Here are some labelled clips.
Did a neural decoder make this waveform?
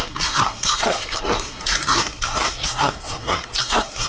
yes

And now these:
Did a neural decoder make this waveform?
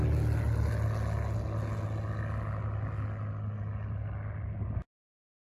no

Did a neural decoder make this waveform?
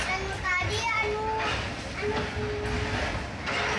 no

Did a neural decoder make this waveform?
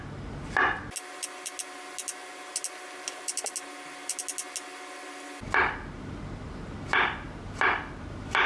no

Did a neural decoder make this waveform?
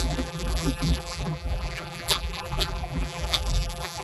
yes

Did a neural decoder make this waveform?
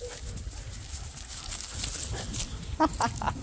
no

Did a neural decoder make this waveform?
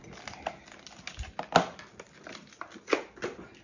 no